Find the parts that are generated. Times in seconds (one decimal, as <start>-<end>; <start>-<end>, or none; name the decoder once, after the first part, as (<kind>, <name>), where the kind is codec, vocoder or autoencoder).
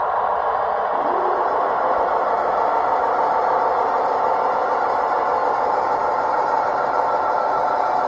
none